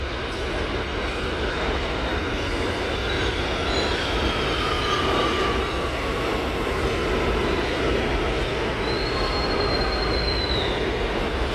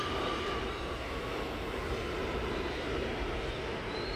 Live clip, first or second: first